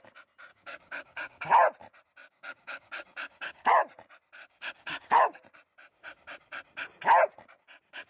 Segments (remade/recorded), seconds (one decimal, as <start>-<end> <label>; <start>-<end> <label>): 0.0-0.5 recorded; 0.5-1.5 remade; 1.5-2.2 recorded; 2.2-3.7 remade; 3.7-4.4 recorded; 4.4-5.2 remade; 5.2-8.1 recorded